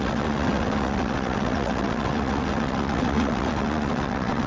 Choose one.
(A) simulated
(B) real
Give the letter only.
A